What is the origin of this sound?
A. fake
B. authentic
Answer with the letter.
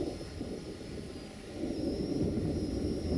B